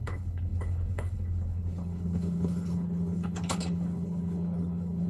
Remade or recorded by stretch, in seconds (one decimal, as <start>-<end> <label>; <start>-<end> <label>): 0.0-5.1 remade